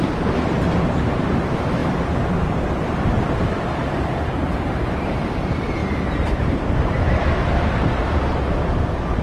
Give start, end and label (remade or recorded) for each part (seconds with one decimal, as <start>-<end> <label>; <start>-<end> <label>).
0.0-9.2 remade

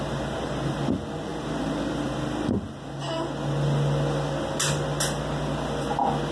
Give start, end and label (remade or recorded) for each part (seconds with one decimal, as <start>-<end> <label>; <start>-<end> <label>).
0.0-6.3 recorded

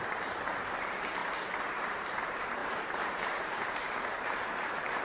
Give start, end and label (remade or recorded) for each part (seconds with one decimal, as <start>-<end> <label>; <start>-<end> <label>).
0.0-1.2 remade; 1.2-1.7 recorded; 1.7-5.0 remade

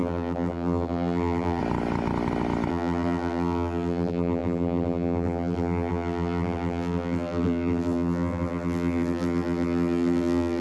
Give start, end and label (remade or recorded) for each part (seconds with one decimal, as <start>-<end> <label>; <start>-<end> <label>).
0.0-1.6 remade; 1.6-2.7 recorded; 2.7-10.6 remade

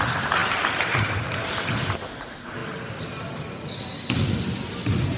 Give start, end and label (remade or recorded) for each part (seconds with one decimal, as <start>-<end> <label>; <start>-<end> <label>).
0.0-0.4 recorded; 0.4-0.9 remade; 0.9-5.2 recorded

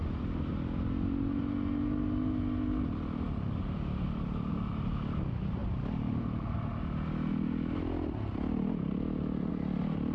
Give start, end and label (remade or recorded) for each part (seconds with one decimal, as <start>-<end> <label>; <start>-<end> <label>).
0.0-10.1 recorded

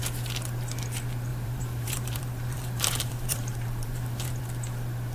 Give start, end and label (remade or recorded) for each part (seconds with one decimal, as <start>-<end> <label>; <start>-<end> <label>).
0.0-1.3 recorded; 1.3-4.4 remade; 4.4-5.1 recorded